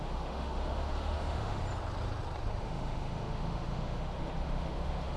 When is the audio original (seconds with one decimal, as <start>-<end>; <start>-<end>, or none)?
1.6-2.6